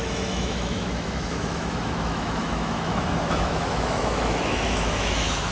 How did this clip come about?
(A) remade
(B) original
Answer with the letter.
A